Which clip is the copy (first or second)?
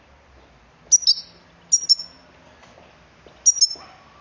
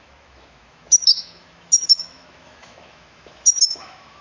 second